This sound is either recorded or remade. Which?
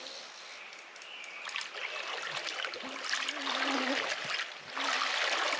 recorded